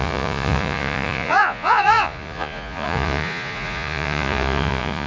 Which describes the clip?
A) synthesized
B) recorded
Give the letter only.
A